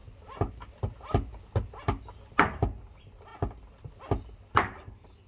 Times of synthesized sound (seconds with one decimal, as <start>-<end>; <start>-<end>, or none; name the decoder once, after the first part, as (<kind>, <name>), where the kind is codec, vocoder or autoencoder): 0.0-1.4 (vocoder, BigVGAN v2)